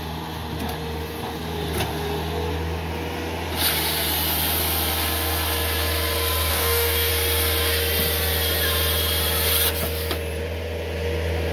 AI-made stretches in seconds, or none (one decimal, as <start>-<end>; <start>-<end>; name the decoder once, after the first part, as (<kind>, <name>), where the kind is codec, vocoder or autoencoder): 6.5-7.1 (codec, DAC)